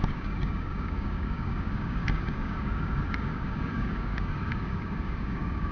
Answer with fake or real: fake